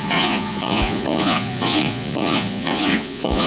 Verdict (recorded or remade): remade